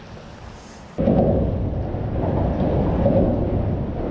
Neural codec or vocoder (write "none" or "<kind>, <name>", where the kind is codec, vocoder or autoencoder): none